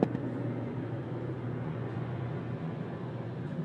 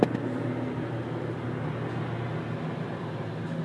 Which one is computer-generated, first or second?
first